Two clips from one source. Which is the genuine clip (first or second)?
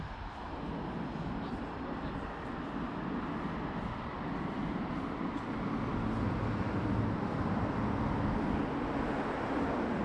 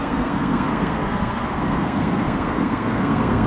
first